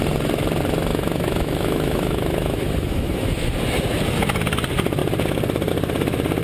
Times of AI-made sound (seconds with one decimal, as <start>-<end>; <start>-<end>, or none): 0.9-3.5

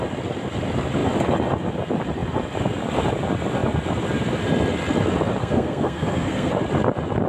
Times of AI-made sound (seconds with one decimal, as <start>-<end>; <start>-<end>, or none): 5.4-6.5

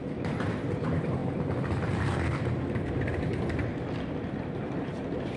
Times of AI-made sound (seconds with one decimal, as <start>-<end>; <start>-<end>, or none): 0.0-1.2; 2.9-3.7; 4.2-5.4

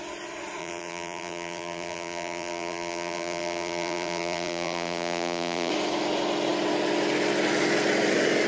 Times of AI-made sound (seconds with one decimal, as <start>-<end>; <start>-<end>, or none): 0.6-5.7

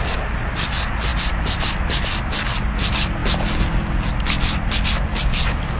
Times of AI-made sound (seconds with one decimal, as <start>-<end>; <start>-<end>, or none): none

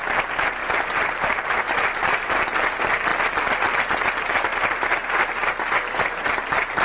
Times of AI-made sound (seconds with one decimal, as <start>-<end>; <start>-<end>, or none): 0.6-2.5

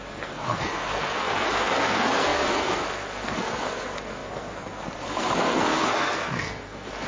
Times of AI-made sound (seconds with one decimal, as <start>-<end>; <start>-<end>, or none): 0.0-7.1